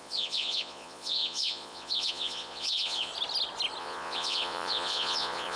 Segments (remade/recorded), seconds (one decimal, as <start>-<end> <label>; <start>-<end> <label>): 0.0-3.1 remade; 3.1-3.8 recorded; 3.8-5.6 remade